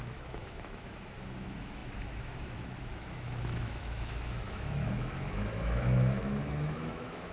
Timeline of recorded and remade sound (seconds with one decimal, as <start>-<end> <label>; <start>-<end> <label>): 0.0-7.3 remade